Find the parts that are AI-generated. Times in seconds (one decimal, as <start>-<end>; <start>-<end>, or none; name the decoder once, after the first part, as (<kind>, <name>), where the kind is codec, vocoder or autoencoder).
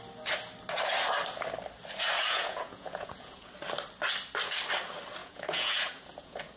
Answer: 2.2-3.5 (vocoder, Vocos); 5.2-6.6